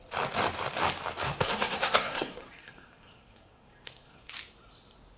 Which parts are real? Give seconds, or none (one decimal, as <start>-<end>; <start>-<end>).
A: 0.0-1.2; 4.3-5.2